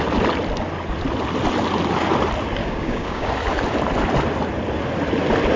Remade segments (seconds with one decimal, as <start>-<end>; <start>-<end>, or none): 2.6-3.3